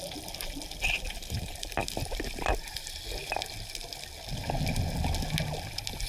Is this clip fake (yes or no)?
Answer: no